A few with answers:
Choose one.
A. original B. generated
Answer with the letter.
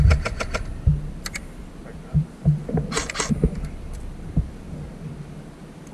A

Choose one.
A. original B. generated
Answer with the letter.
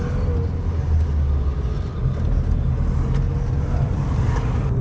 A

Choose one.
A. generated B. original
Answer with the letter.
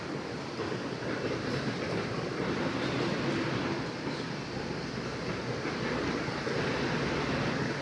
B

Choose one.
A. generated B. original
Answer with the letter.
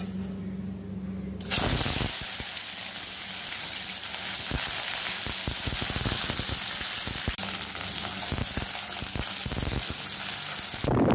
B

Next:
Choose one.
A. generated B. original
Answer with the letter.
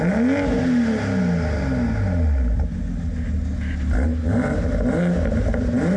B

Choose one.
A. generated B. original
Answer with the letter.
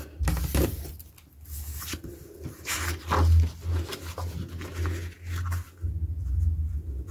B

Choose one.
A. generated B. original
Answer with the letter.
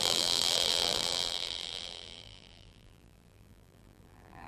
A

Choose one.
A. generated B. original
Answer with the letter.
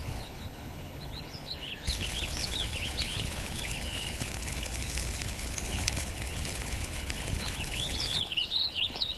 A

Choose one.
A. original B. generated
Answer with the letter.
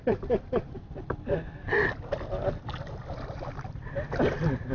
A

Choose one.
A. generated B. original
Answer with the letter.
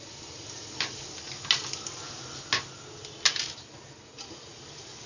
B